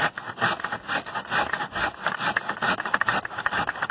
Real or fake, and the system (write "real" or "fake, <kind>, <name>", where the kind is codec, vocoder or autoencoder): real